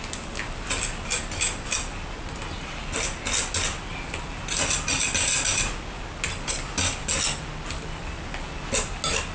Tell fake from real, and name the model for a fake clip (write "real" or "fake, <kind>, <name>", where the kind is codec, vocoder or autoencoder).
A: real